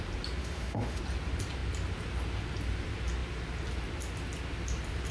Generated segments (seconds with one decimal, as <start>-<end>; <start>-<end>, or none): 0.4-1.0